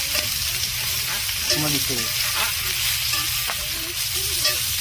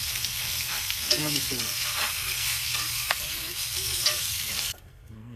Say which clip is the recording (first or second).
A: first